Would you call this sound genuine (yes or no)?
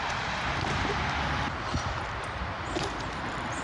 yes